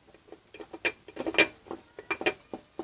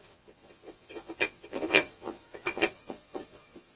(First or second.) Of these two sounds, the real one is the first